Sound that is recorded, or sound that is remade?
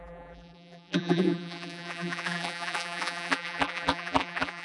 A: remade